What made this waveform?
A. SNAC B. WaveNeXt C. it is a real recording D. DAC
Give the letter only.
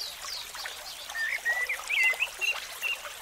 C